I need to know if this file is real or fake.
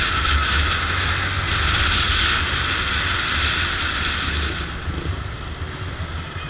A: real